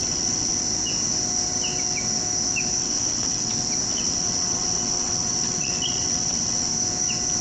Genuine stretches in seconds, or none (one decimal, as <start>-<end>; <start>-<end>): 0.6-2.8; 3.5-3.9; 6.7-7.4